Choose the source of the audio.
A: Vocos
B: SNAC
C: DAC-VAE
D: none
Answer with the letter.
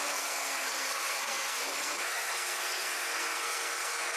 B